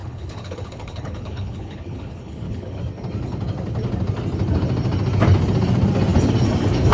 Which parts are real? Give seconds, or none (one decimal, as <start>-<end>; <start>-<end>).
2.8-6.9